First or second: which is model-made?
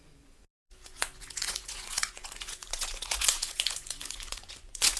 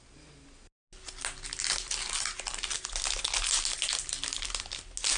first